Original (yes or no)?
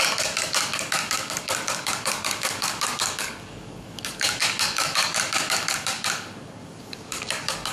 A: no